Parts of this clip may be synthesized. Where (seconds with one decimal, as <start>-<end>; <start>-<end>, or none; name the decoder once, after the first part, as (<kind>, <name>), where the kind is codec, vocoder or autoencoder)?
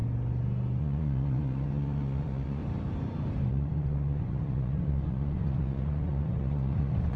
0.8-2.6 (vocoder, Vocos); 3.5-7.2